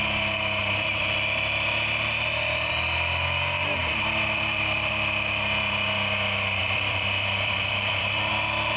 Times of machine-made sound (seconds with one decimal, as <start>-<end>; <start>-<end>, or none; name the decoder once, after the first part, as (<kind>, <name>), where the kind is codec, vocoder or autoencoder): 0.6-2.7 (vocoder, BigVGAN v2); 3.8-4.9; 6.6-8.3